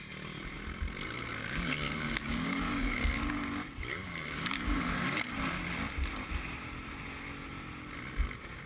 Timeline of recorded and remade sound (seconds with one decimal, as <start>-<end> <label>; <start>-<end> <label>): 0.0-1.4 recorded; 1.4-5.2 remade; 5.2-8.7 recorded